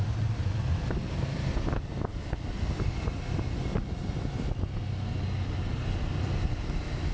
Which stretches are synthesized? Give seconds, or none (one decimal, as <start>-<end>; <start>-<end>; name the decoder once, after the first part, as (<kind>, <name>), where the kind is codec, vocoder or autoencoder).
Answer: none